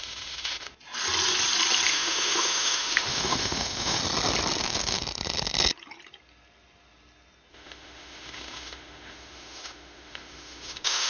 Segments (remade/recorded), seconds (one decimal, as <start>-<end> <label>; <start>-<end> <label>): 0.0-0.7 remade; 0.7-1.9 recorded; 1.9-4.0 remade; 4.0-4.6 recorded; 4.6-5.0 remade; 5.0-7.5 recorded; 7.5-11.1 remade

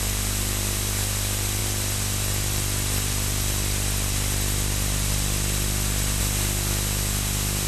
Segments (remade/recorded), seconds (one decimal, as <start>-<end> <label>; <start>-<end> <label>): 0.0-1.6 recorded; 1.6-6.2 remade; 6.2-7.7 recorded

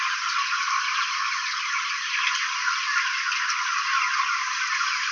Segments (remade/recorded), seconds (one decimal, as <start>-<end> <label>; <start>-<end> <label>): 0.0-5.1 recorded